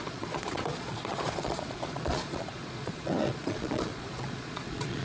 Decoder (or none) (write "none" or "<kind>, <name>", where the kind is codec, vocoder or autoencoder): vocoder, Vocos